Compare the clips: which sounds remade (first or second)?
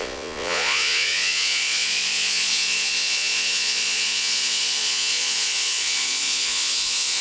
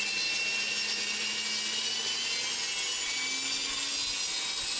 first